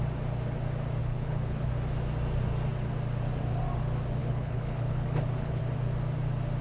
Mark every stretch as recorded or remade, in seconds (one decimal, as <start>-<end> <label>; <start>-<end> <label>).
0.0-1.0 recorded; 1.0-1.7 remade; 1.7-4.2 recorded; 4.2-5.6 remade; 5.6-6.6 recorded